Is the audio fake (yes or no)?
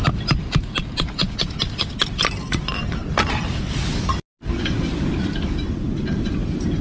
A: no